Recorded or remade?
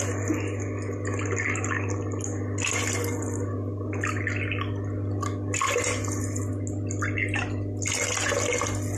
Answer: recorded